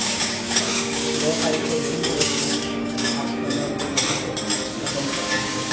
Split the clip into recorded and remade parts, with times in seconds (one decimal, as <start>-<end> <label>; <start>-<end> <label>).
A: 0.0-3.7 remade; 3.7-4.9 recorded; 4.9-5.7 remade